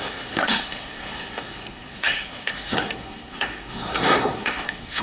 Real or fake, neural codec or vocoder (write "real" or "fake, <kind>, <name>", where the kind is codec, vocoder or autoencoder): fake, codec, SNAC